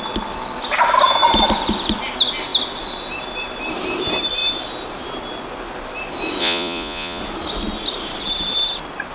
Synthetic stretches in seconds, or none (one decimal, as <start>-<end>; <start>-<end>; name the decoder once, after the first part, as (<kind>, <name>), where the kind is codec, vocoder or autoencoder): 6.4-7.2 (vocoder, Vocos)